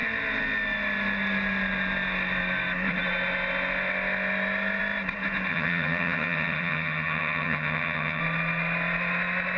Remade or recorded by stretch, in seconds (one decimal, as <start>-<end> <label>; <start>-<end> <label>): 0.0-5.5 recorded; 5.5-8.2 remade; 8.2-9.6 recorded